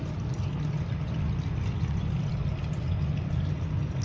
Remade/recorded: recorded